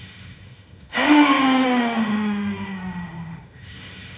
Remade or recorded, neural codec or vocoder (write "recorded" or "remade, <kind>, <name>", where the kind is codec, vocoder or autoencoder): remade, autoencoder, DAC-VAE